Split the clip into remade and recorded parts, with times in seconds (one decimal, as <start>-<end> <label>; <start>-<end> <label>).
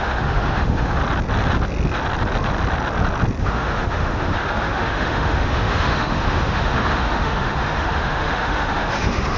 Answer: 0.0-1.0 remade; 1.0-3.4 recorded; 3.4-9.4 remade